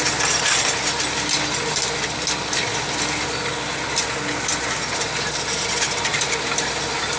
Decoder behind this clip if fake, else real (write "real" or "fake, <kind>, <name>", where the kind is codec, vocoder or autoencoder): real